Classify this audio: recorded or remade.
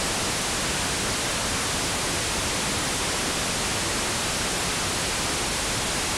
recorded